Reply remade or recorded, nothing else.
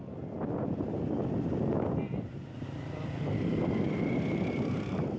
recorded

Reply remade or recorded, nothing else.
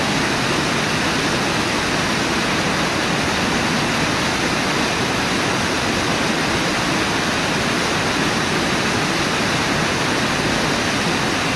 recorded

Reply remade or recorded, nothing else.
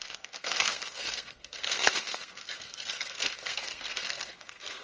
remade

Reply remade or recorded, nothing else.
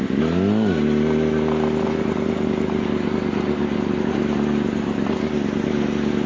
recorded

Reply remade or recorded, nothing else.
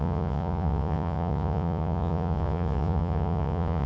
remade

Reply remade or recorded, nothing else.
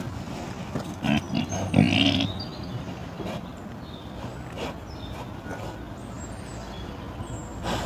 recorded